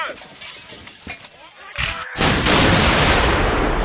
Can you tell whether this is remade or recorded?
recorded